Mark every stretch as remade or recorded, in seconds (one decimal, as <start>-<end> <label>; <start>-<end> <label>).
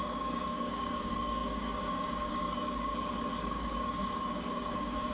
0.0-2.9 remade; 2.9-3.4 recorded; 3.4-5.1 remade